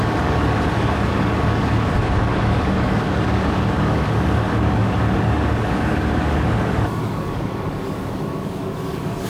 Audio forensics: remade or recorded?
remade